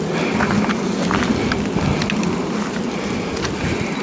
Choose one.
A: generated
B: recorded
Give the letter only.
B